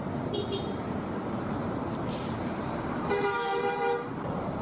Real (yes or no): no